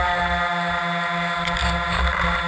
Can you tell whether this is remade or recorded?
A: recorded